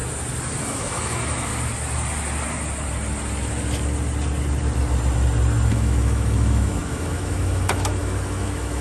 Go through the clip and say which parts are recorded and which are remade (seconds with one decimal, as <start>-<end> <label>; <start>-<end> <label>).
0.0-0.6 recorded; 0.6-1.5 remade; 1.5-5.7 recorded; 5.7-8.8 remade